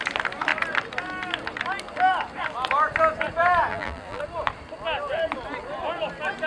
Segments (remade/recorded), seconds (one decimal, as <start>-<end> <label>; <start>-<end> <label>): 0.0-3.7 recorded; 3.7-4.2 remade; 4.2-6.5 recorded